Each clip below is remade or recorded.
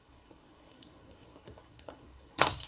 remade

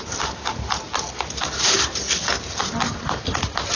recorded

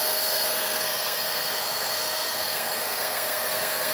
remade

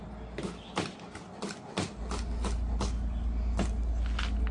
recorded